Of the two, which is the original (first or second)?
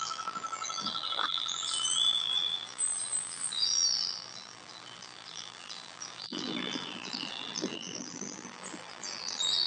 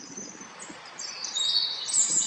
second